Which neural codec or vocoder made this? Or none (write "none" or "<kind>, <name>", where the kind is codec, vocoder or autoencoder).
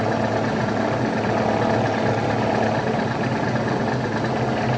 none